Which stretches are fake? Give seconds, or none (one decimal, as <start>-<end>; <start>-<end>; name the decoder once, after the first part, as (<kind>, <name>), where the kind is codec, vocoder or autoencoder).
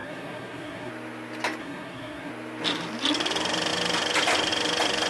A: 0.0-0.9 (codec, SNAC); 1.6-2.3